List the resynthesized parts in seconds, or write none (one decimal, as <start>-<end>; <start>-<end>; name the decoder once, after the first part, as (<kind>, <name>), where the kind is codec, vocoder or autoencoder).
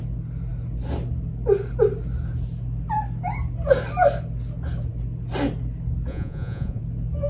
6.1-6.8 (vocoder, Vocos)